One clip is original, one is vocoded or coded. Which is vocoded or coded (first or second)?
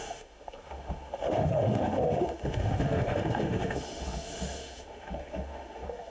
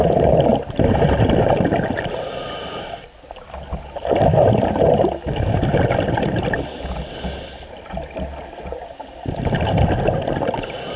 first